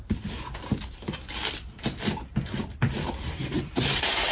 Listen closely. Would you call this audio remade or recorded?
recorded